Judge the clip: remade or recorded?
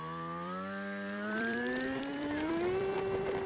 remade